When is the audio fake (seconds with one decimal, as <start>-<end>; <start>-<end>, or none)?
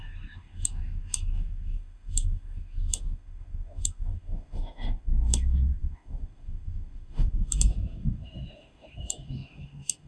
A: 0.0-10.1